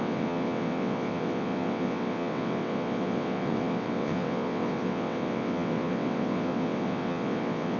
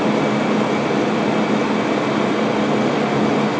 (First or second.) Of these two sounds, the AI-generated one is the first